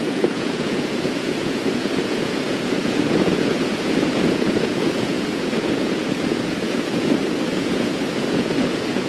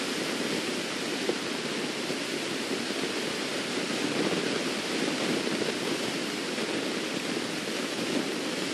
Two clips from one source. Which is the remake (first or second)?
first